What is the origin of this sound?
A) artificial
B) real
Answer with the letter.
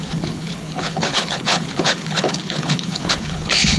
A